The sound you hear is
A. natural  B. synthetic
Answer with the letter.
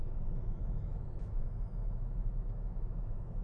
B